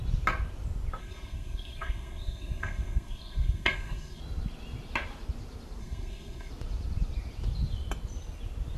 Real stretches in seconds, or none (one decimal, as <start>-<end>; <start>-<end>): 0.0-1.0; 4.2-5.8; 6.5-8.8